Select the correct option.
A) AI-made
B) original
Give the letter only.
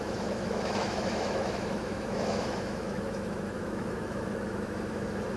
A